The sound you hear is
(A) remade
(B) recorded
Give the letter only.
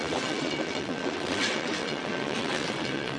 A